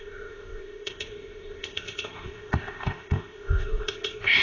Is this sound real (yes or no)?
no